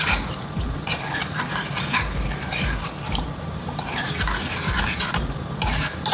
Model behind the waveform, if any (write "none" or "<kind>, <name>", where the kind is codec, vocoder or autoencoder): vocoder, BigVGAN v2